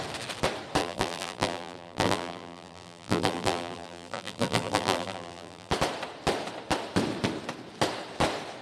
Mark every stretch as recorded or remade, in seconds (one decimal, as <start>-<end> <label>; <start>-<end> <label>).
0.0-0.8 recorded; 0.8-5.7 remade; 5.7-8.6 recorded